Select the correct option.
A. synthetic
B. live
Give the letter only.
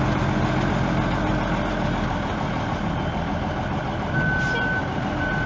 B